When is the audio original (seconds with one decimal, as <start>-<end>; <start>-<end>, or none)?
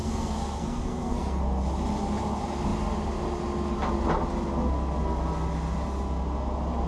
1.4-6.9